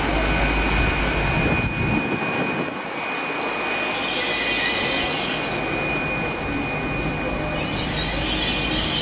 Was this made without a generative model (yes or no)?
yes